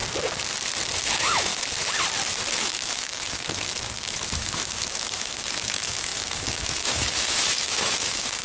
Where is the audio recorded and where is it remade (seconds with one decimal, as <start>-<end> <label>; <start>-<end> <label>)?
0.0-1.0 recorded; 1.0-1.5 remade; 1.5-2.5 recorded; 2.5-8.4 remade